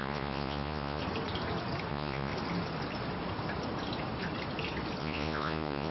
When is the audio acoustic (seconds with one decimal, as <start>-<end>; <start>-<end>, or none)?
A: 1.0-1.9; 2.3-5.0